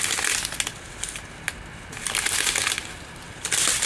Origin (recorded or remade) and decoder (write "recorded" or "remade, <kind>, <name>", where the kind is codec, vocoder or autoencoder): recorded